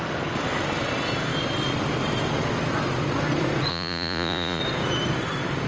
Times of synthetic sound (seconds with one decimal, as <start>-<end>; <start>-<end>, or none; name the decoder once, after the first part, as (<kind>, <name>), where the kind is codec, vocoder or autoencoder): 3.7-4.6 (vocoder, Vocos)